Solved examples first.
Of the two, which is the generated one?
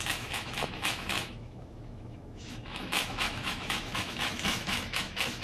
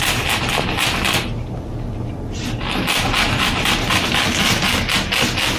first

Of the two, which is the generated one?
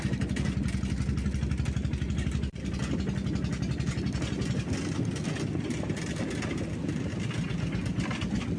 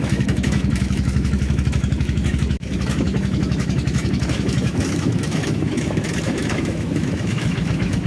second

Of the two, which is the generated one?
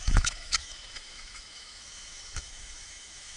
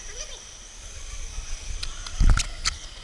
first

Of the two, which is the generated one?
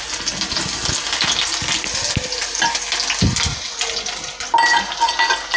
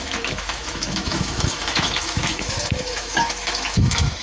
second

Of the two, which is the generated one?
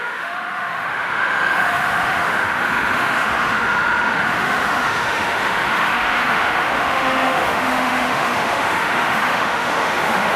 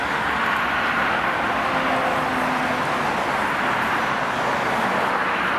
first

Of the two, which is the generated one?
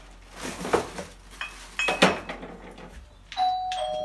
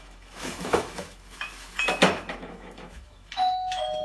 second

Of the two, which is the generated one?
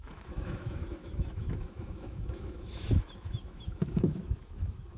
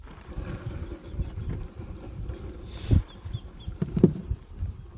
first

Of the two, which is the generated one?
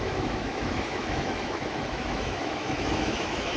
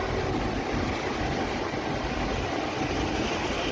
first